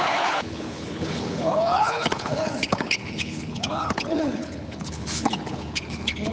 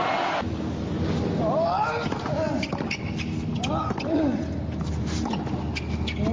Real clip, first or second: second